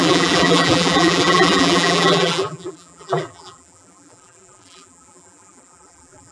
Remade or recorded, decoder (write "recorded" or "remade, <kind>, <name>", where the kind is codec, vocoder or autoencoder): remade, vocoder, BigVGAN v2